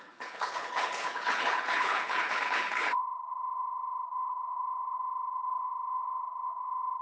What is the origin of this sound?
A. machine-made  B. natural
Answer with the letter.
A